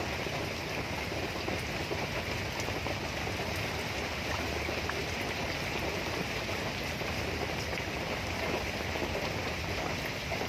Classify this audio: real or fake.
real